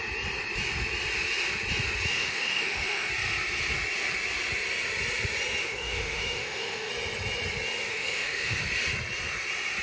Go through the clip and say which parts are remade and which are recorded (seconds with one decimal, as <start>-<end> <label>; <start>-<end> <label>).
0.0-2.1 recorded; 2.1-3.1 remade; 3.1-5.6 recorded; 5.6-6.9 remade; 6.9-7.9 recorded; 7.9-8.6 remade; 8.6-9.8 recorded